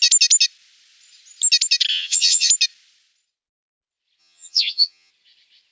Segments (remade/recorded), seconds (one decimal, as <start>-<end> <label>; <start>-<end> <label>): 0.0-1.9 recorded; 1.9-2.5 remade; 2.5-4.2 recorded; 4.2-5.1 remade; 5.1-5.7 recorded